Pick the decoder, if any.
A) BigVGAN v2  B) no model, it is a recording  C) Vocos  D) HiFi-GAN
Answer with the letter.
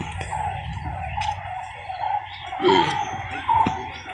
C